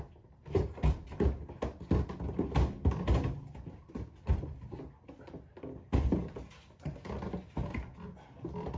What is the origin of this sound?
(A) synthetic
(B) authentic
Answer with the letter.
B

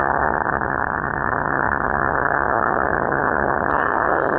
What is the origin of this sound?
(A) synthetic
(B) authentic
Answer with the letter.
A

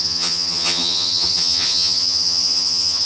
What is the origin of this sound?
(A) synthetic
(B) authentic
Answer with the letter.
A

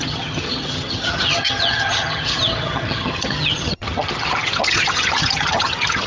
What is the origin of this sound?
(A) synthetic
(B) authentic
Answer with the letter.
A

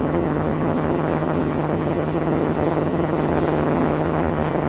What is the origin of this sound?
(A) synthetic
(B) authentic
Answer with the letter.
A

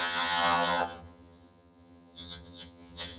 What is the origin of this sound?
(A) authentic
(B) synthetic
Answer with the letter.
B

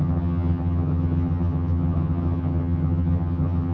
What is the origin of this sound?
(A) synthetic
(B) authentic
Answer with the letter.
A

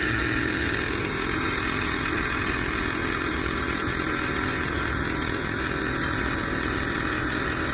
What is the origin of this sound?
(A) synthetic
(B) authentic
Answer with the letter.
A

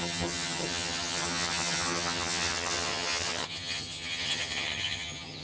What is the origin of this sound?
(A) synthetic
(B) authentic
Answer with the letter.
A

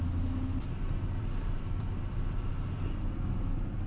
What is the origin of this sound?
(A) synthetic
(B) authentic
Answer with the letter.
B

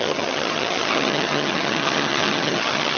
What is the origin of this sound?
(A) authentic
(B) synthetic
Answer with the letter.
B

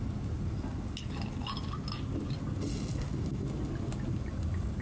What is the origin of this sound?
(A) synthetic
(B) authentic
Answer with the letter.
B